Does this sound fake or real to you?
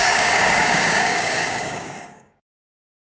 fake